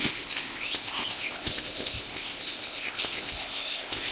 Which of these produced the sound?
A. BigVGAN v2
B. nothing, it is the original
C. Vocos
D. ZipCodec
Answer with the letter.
D